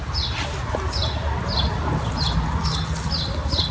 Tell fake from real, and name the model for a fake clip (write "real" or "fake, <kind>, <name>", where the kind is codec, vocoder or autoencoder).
real